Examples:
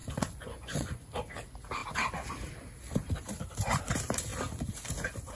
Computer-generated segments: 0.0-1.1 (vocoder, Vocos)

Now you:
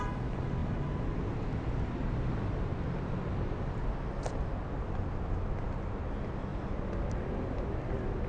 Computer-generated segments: none

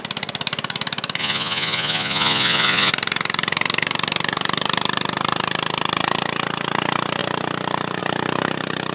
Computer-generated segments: 1.2-2.9 (vocoder, Vocos)

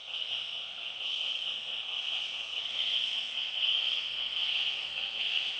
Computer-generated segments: 0.0-5.6 (codec, SNAC)

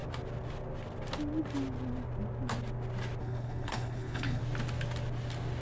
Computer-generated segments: 3.2-4.4 (codec, HILCodec)

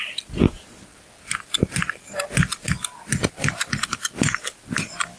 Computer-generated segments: 0.0-0.9 (vocoder, BigVGAN v2); 3.3-5.2